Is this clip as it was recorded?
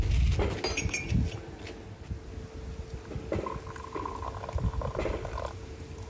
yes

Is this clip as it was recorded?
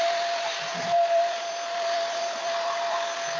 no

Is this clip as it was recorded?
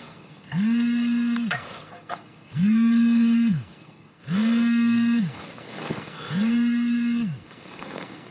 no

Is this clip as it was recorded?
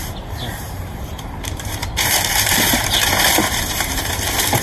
no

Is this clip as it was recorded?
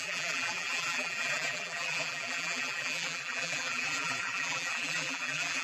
no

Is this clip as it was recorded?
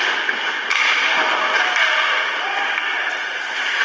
yes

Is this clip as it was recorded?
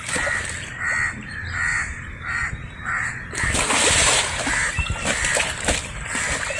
yes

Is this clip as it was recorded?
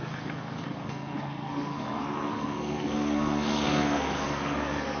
no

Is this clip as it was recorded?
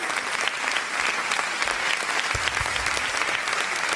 yes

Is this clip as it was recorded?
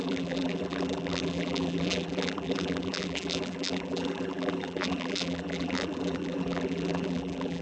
no